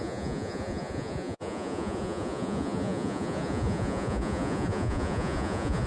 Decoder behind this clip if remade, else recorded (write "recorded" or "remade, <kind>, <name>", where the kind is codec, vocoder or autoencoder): remade, vocoder, Vocos